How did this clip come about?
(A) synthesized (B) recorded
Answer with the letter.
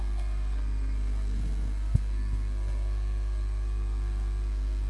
A